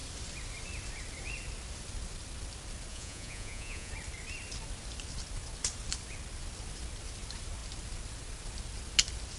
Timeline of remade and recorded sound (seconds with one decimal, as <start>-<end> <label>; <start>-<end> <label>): 0.0-2.9 recorded; 2.9-3.9 remade; 3.9-9.4 recorded

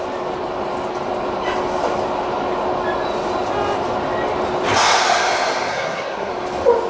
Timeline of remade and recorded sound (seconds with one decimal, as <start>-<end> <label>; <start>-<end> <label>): 0.0-5.7 recorded; 5.7-6.3 remade; 6.3-6.9 recorded

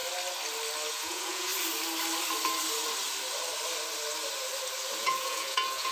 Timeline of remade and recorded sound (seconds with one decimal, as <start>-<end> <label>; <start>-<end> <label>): 0.0-0.9 recorded; 0.9-1.5 remade; 1.5-5.0 recorded; 5.0-5.9 remade

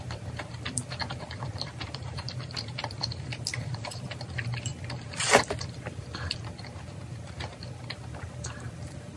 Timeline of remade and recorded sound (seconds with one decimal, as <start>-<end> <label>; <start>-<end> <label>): 0.0-4.7 remade; 4.7-8.2 recorded; 8.2-9.2 remade

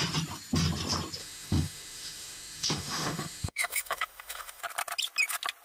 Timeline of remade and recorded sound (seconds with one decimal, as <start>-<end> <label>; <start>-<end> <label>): 0.0-1.2 recorded; 1.2-4.6 remade; 4.6-5.6 recorded

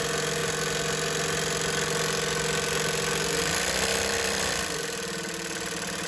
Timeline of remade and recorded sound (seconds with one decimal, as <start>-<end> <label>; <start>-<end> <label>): 0.0-3.9 recorded; 3.9-6.1 remade